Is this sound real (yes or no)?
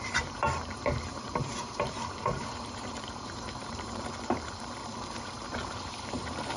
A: no